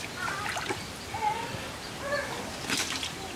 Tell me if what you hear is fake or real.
fake